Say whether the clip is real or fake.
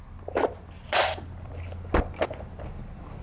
real